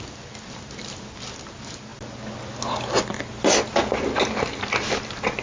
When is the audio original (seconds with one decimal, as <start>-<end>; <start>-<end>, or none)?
0.0-5.4